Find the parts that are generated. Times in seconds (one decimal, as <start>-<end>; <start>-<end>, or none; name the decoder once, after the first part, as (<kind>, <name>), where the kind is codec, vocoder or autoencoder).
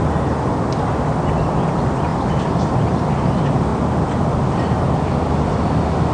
none